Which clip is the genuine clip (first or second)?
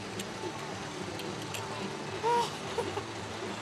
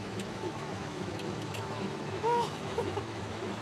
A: first